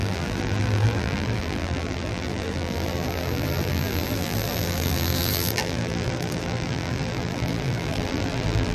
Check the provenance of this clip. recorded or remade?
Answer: remade